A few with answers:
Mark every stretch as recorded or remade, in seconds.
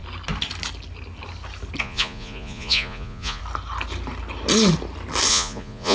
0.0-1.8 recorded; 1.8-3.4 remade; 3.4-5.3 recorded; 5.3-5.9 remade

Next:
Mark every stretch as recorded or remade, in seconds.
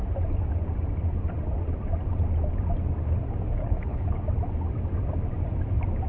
0.0-3.6 recorded; 3.6-4.2 remade; 4.2-6.1 recorded